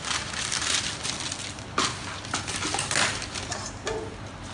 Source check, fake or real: real